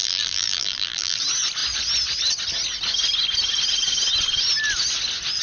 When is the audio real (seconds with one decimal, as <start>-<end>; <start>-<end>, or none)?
1.2-5.4